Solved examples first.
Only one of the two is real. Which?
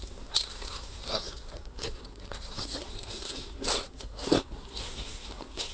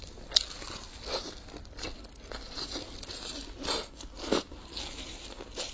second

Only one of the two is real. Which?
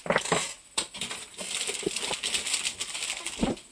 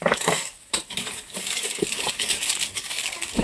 first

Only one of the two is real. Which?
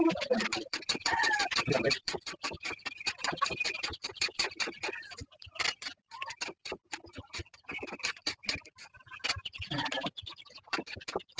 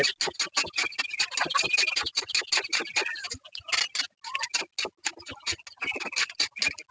second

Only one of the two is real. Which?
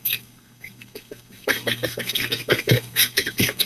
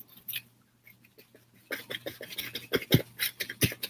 second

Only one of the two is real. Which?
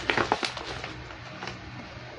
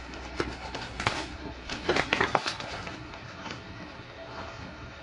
first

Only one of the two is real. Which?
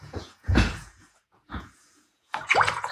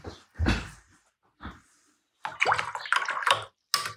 second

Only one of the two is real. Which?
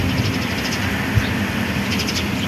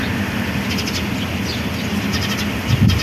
first